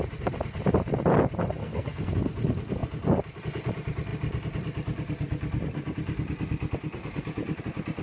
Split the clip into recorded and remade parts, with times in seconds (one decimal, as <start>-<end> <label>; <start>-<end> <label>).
0.0-1.6 recorded; 1.6-2.1 remade; 2.1-8.0 recorded